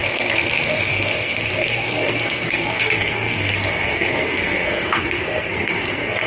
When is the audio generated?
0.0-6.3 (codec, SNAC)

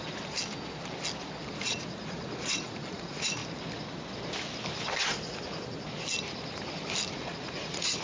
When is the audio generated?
1.6-3.4 (vocoder, Vocos); 7.1-8.0

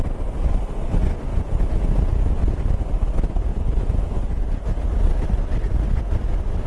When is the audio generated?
1.3-2.3 (vocoder, Vocos); 3.5-4.2

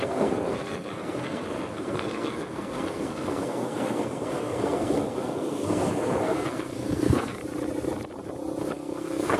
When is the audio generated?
0.0-7.4 (codec, SNAC); 8.6-9.4

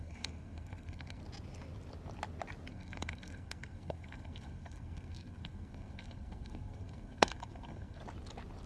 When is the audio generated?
0.0-1.2 (codec, SNAC); 2.7-8.0

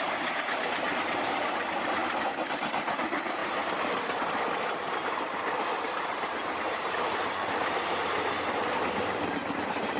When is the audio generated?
none